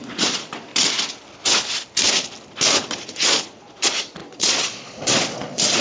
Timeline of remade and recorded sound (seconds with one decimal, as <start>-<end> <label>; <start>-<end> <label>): 0.0-0.7 remade; 0.7-2.7 recorded; 2.7-5.8 remade